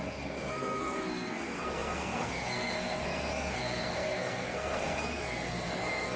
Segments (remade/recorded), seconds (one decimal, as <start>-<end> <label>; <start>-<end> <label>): 0.0-6.2 remade